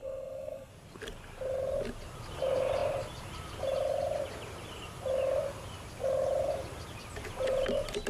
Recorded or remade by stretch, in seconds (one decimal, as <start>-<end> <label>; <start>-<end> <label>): 0.0-0.7 remade; 0.7-8.1 recorded